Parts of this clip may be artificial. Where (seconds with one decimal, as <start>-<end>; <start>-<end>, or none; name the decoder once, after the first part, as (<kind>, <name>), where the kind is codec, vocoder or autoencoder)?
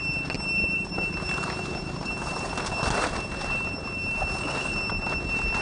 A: 0.6-2.5 (vocoder, BigVGAN v2)